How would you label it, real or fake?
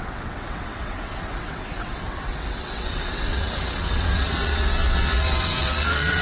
fake